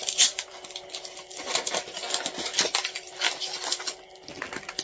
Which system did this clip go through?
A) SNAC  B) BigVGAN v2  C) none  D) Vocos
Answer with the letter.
B